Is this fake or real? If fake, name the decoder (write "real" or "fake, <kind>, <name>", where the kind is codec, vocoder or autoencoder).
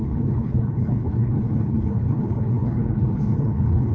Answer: fake, codec, HILCodec